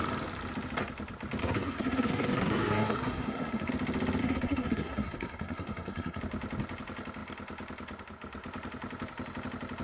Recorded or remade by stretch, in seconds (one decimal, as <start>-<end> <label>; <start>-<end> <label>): 0.0-1.4 recorded; 1.4-3.7 remade; 3.7-4.2 recorded; 4.2-6.2 remade; 6.2-9.8 recorded